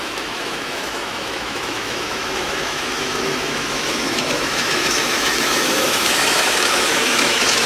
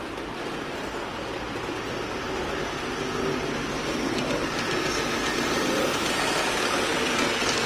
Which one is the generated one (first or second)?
first